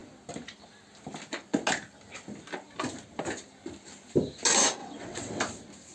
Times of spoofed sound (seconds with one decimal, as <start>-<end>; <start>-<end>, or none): 4.8-5.4